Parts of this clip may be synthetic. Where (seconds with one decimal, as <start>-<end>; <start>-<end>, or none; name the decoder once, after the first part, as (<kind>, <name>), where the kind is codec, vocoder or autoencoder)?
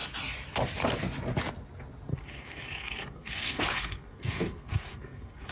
2.1-5.5 (codec, SNAC)